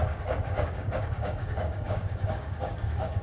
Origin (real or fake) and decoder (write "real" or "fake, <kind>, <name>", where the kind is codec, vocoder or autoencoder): fake, codec, DAC